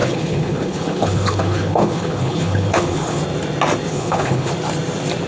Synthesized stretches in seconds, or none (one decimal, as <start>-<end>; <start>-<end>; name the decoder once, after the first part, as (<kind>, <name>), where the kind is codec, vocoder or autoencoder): 0.0-3.2 (codec, HILCodec); 3.9-4.5